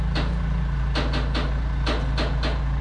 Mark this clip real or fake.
real